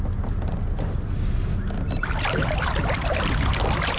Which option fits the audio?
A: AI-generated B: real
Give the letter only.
B